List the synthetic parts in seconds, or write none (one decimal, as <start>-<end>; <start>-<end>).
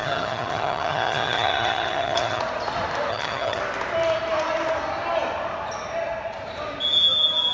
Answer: 0.0-2.4; 3.1-3.6